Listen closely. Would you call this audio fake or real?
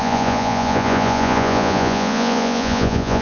fake